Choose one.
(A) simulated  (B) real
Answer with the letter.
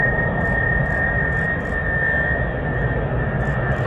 B